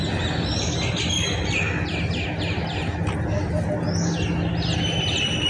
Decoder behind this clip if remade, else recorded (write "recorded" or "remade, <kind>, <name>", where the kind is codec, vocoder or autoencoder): recorded